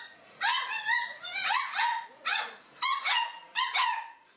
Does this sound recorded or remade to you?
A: remade